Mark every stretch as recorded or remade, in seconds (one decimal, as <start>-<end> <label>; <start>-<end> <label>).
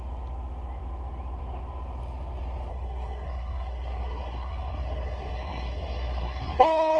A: 0.0-2.7 recorded; 2.7-7.0 remade